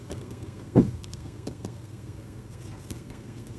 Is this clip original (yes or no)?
no